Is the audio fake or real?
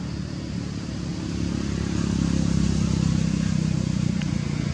real